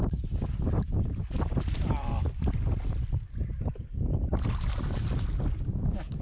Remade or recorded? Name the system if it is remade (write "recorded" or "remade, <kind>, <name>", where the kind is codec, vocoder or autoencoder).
recorded